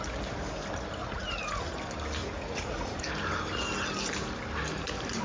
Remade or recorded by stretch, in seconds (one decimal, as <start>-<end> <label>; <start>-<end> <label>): 0.0-1.0 recorded; 1.0-1.8 remade; 1.8-2.2 recorded; 2.2-3.0 remade; 3.0-5.2 recorded